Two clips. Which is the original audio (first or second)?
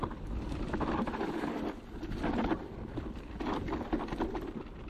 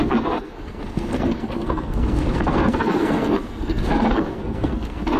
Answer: first